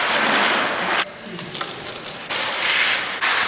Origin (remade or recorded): recorded